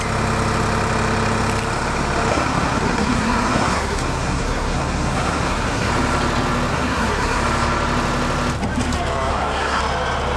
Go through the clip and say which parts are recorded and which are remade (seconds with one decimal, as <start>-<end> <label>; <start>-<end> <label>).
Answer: 0.0-2.3 recorded; 2.3-5.9 remade; 5.9-6.7 recorded; 6.7-7.4 remade; 7.4-9.3 recorded; 9.3-9.8 remade; 9.8-10.4 recorded